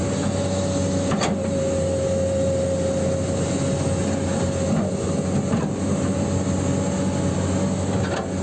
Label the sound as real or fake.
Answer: real